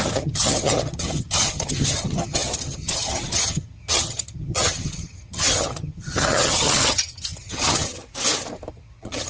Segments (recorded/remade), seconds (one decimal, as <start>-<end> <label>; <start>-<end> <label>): 0.0-8.0 remade; 8.0-8.7 recorded; 8.7-9.3 remade